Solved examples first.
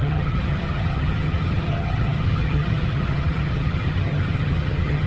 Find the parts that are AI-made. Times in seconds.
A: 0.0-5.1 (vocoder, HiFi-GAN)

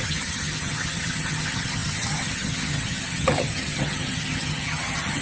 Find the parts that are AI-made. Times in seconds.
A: 0.0-5.2 (vocoder, HiFi-GAN)

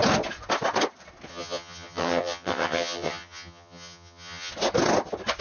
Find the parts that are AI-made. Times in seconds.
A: 1.3-4.5 (vocoder, HiFi-GAN)